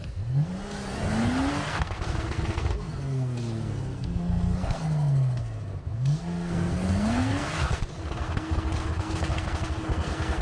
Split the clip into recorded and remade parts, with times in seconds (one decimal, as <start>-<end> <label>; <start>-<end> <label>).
0.0-0.5 remade; 0.5-1.5 recorded; 1.5-10.4 remade